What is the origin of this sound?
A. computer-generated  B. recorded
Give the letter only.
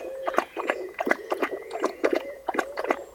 A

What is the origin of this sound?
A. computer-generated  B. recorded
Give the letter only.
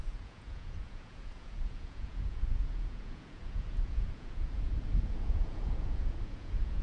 A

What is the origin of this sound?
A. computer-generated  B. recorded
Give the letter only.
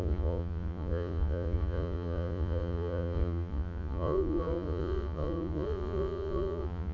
A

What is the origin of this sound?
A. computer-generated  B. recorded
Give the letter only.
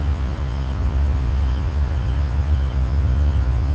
A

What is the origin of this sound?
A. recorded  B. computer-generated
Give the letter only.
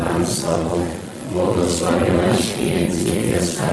B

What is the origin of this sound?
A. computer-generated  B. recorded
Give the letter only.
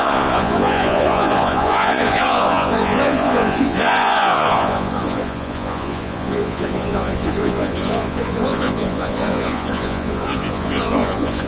A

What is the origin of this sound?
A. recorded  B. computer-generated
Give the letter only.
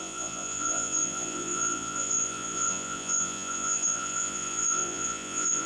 B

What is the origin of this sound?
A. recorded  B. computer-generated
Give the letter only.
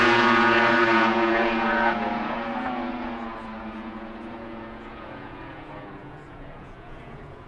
B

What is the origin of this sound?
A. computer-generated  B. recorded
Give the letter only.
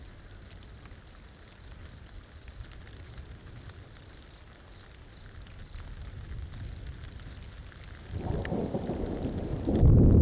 B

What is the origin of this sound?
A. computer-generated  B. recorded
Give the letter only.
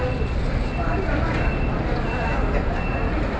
B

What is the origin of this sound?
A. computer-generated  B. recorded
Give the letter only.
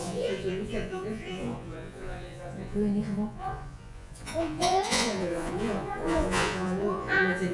A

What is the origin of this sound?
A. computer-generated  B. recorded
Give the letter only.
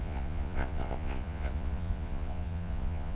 A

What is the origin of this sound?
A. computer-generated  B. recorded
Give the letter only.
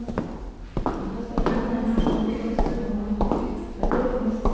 B